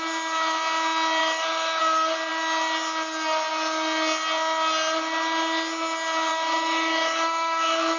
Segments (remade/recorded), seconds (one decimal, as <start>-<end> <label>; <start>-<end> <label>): 0.0-1.2 recorded; 1.2-1.8 remade; 1.8-6.3 recorded; 6.3-8.0 remade